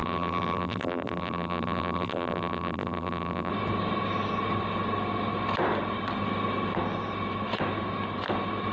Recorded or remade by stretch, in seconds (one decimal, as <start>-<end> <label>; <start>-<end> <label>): 0.0-3.5 remade; 3.5-8.7 recorded